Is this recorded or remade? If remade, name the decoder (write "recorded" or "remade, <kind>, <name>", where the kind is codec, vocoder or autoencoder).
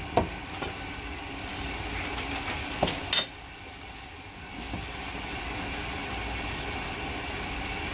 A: recorded